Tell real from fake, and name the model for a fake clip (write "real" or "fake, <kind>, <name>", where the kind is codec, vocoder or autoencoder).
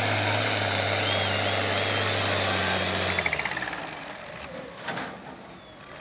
real